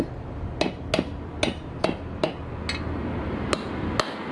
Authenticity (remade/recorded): recorded